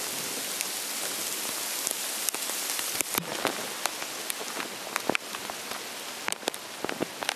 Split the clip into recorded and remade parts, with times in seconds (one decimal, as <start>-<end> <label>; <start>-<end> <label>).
0.0-7.4 recorded